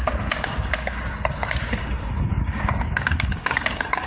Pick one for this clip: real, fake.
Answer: fake